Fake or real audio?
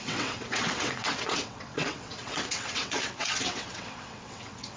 fake